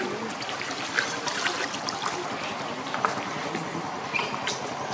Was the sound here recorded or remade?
recorded